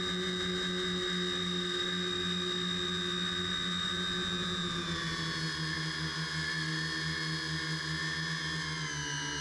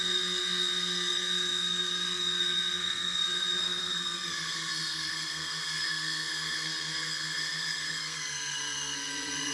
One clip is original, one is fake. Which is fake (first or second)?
second